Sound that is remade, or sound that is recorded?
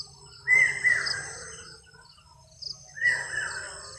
recorded